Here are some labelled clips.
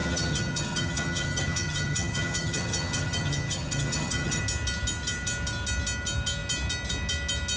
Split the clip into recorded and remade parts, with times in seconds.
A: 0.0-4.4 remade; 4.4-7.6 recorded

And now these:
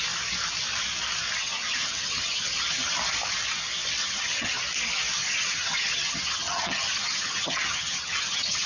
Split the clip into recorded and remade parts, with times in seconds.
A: 0.0-1.4 recorded; 1.4-2.9 remade; 2.9-4.0 recorded; 4.0-4.6 remade; 4.6-5.2 recorded; 5.2-8.7 remade

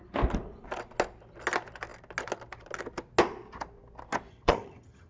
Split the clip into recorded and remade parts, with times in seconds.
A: 0.0-4.3 recorded; 4.3-5.1 remade

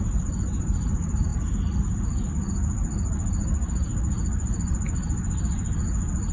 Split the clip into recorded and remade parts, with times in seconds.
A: 0.0-6.3 recorded